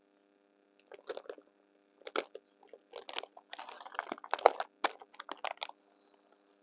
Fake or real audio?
real